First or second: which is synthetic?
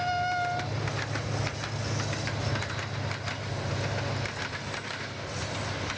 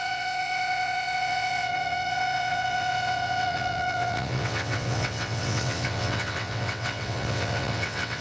second